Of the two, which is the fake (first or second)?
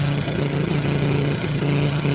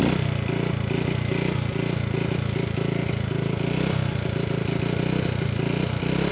first